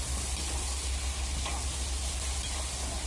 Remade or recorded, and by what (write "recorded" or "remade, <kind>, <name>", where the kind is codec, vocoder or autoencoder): recorded